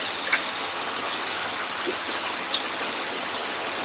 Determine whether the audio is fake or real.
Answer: fake